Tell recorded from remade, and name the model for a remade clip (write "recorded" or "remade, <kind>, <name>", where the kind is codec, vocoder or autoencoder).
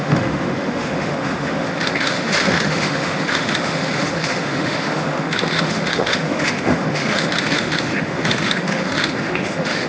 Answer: remade, autoencoder, DAC-VAE